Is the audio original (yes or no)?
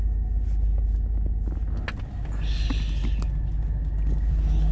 yes